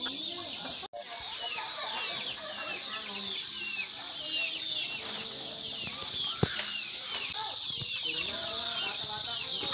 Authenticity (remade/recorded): recorded